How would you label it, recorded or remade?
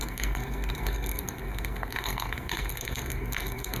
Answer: remade